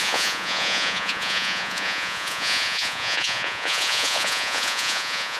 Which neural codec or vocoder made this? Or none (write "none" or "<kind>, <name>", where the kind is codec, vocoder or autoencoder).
vocoder, Vocos